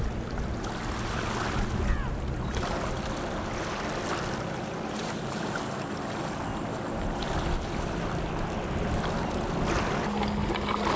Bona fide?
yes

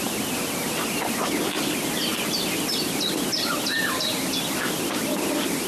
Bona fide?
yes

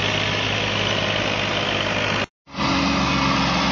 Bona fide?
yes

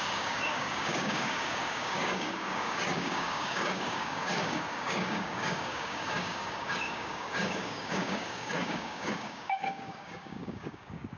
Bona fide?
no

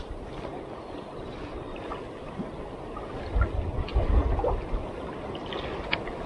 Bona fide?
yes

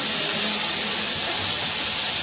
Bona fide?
yes